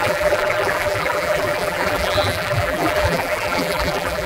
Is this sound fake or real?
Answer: fake